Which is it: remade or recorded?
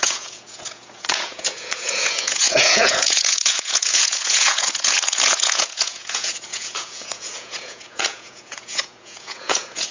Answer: remade